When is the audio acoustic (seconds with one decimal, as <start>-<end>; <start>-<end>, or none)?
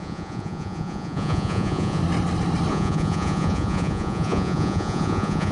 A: 2.0-2.7